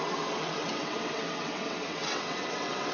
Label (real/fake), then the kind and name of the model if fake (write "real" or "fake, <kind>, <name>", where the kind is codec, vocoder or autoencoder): fake, vocoder, WaveNeXt